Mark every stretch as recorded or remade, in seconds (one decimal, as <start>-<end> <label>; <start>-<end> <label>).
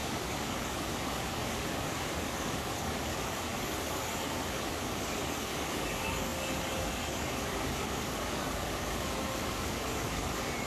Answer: 0.0-10.7 remade